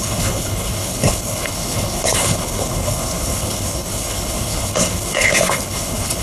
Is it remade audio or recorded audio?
remade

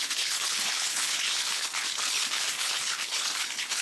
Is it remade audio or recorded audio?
remade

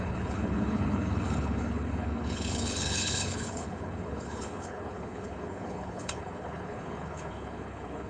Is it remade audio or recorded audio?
remade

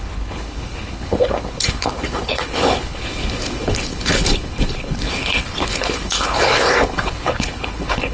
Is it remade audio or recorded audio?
remade